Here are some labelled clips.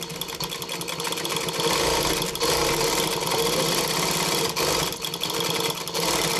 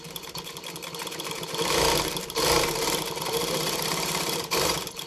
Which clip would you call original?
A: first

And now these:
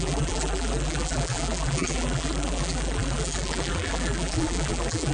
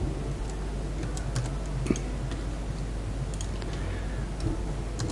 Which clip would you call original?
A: second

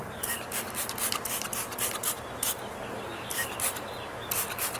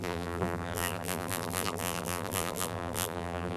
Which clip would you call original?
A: first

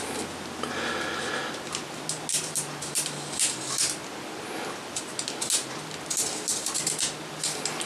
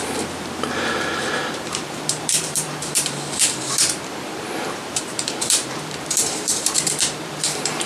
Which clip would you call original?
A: first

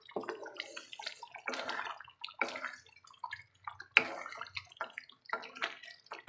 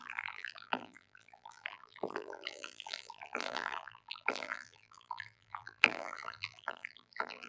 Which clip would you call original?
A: first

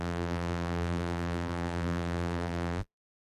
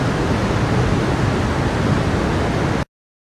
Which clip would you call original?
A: second